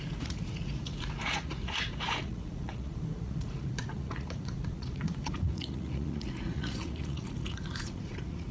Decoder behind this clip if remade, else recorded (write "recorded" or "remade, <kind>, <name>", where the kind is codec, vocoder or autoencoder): remade, vocoder, Vocos